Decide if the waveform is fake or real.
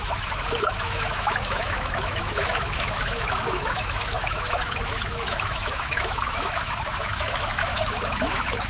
fake